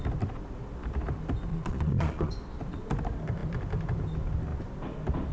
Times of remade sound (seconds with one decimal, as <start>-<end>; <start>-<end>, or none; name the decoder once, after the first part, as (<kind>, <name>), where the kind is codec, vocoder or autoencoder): 1.5-2.3 (vocoder, Vocos)